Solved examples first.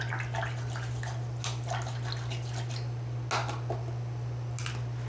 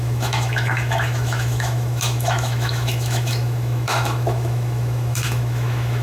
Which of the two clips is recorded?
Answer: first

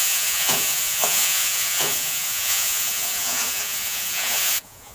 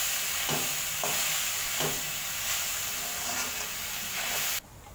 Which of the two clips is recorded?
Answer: second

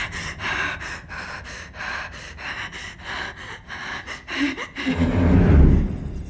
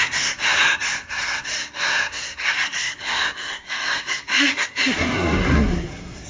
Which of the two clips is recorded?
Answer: first